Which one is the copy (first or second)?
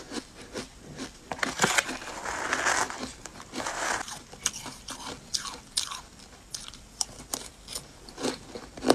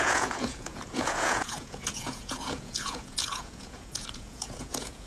second